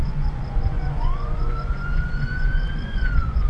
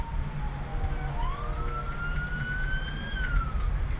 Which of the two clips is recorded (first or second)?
second